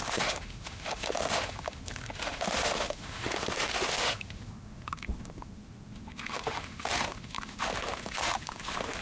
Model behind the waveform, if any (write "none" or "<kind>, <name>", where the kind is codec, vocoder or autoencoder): autoencoder, DAC-VAE